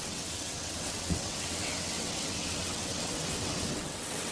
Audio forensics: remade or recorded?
remade